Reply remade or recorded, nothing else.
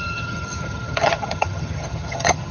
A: remade